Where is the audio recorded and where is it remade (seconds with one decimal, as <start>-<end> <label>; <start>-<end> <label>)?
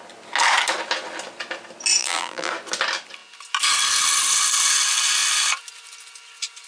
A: 0.0-2.0 recorded; 2.0-2.5 remade; 2.5-6.7 recorded